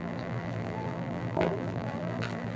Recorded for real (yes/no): no